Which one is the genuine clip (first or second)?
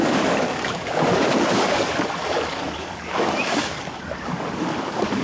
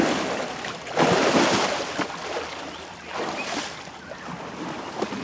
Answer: second